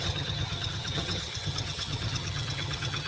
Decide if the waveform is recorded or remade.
remade